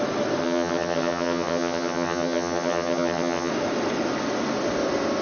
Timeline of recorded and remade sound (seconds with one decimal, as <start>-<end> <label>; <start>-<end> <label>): 0.0-0.4 recorded; 0.4-3.5 remade; 3.5-5.2 recorded